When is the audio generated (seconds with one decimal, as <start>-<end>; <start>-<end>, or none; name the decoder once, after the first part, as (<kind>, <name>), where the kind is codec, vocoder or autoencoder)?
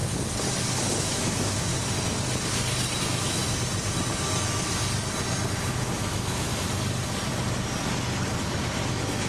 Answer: 1.0-1.7 (autoencoder, DAC-VAE); 3.0-3.4; 5.7-6.5; 8.9-9.3